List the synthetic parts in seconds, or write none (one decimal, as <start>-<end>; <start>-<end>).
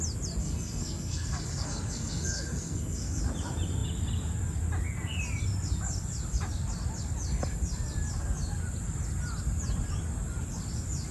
0.4-3.2